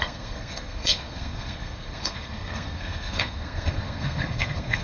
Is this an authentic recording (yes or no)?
no